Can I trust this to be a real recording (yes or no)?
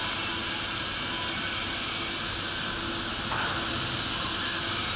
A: yes